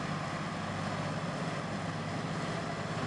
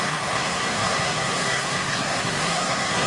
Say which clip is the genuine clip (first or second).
first